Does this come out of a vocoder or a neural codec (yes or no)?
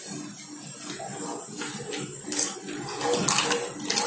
no